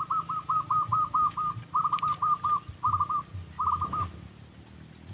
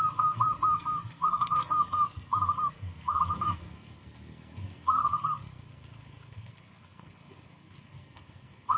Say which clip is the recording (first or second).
first